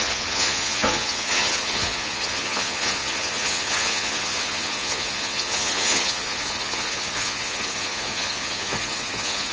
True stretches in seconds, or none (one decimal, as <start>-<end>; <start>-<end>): none